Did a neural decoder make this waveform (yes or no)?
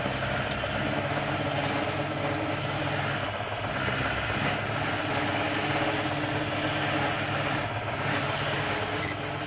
no